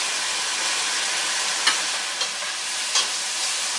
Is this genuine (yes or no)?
yes